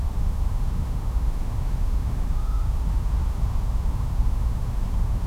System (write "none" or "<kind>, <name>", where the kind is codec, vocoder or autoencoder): autoencoder, DAC-VAE